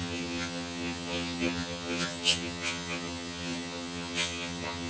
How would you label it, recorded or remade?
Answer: remade